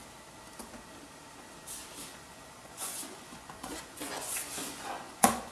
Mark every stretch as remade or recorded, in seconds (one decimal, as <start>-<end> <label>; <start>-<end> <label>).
0.0-2.1 recorded; 2.1-5.5 remade